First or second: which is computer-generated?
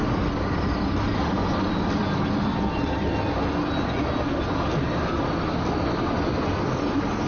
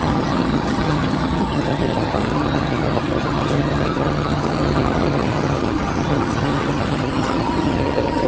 second